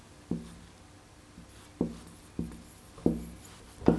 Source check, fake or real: real